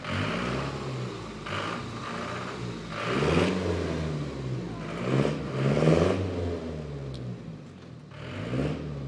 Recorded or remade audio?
recorded